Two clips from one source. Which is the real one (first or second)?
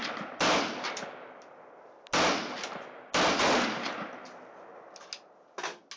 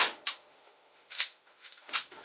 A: first